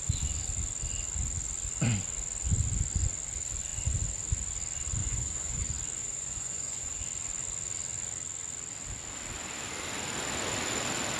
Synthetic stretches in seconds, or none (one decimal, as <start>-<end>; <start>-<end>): 5.0-5.6; 6.0-7.0